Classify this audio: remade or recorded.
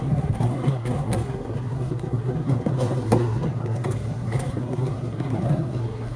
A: remade